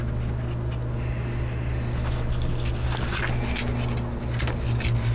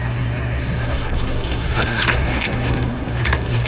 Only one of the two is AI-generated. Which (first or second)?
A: second